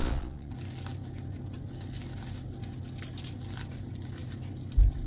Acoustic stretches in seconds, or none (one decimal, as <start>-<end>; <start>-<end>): 0.5-5.1